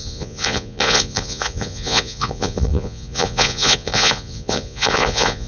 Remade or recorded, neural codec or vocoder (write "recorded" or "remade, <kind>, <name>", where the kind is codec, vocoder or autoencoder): remade, vocoder, Vocos